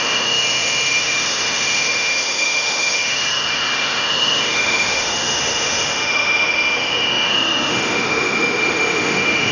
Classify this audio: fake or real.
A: fake